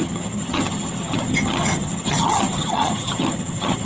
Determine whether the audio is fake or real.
fake